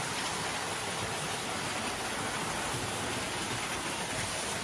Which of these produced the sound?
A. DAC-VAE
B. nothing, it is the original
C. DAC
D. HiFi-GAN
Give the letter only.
B